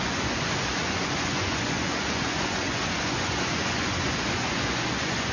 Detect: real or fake fake